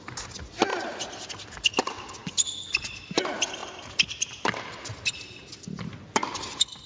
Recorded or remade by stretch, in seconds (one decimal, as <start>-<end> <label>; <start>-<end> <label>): 0.0-0.7 recorded; 0.7-1.3 remade; 1.3-6.9 recorded